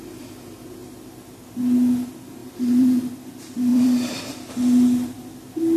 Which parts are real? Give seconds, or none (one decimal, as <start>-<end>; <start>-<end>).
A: 0.0-2.4; 3.0-3.7; 4.5-5.8